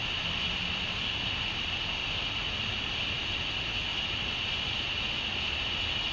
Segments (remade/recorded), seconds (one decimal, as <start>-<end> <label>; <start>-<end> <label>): 0.0-2.0 recorded; 2.0-3.2 remade; 3.2-3.9 recorded; 3.9-5.0 remade; 5.0-6.1 recorded